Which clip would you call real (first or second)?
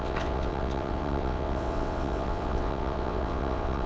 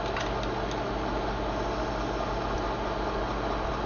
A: second